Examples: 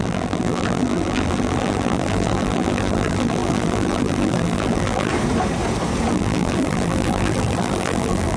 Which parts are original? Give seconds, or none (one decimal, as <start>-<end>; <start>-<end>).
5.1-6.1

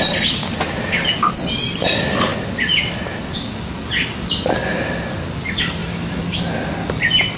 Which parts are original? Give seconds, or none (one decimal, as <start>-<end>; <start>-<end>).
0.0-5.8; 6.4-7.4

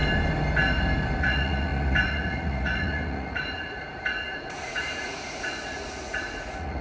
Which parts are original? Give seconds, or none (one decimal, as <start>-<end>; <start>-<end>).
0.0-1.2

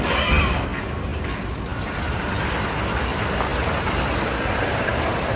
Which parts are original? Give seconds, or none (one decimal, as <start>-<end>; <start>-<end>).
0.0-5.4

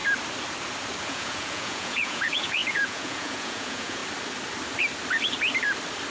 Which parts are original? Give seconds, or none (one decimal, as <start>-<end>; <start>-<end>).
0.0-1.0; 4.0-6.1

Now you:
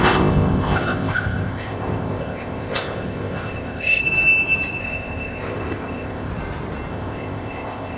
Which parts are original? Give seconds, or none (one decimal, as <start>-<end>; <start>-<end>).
4.0-4.8; 6.3-6.9

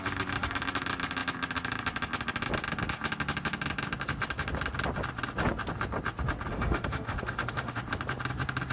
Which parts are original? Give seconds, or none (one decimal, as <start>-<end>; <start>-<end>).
0.0-6.5; 7.8-8.7